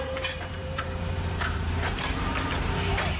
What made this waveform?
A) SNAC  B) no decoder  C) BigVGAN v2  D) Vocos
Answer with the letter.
C